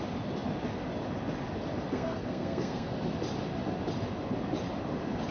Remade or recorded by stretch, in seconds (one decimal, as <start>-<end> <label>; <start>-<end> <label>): 0.0-1.9 recorded; 1.9-2.9 remade; 2.9-5.3 recorded